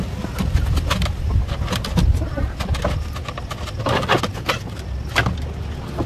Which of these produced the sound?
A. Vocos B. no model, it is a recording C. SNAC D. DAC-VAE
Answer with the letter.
B